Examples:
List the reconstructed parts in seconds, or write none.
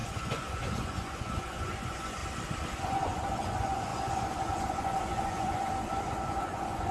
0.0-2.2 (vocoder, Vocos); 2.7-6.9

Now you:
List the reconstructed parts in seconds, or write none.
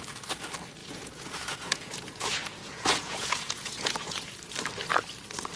0.8-4.2 (vocoder, Vocos)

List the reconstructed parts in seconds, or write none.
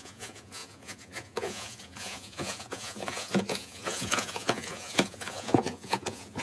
0.0-6.4 (vocoder, Vocos)